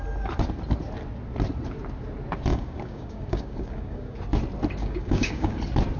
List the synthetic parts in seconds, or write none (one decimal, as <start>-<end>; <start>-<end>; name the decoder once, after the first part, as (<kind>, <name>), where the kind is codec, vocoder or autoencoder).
2.5-4.2 (codec, DAC); 4.8-5.6